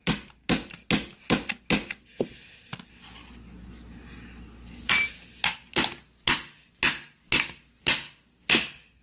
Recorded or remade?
recorded